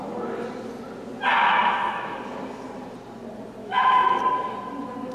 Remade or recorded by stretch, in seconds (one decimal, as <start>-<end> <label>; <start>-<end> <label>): 0.0-1.4 recorded; 1.4-2.2 remade; 2.2-3.6 recorded; 3.6-4.2 remade; 4.2-5.1 recorded